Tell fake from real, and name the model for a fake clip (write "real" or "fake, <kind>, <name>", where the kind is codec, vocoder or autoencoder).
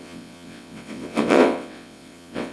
fake, vocoder, WaveNeXt